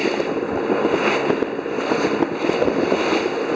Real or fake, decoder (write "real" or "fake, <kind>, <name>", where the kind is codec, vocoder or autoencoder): real